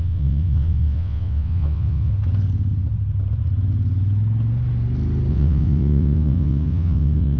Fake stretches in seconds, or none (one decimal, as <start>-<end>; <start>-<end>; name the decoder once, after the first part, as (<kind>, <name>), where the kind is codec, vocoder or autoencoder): 0.0-2.1 (vocoder, WaveNeXt); 5.3-7.4